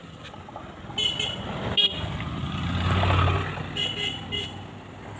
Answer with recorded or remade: recorded